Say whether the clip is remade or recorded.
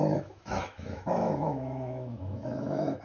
remade